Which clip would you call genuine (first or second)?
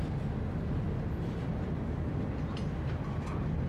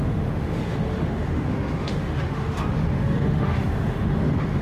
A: first